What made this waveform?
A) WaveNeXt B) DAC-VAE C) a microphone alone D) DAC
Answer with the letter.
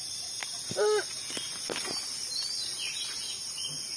C